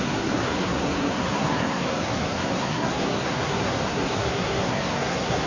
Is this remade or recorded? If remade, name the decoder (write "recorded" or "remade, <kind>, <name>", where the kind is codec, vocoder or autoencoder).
remade, codec, SNAC